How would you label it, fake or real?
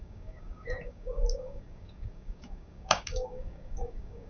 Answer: fake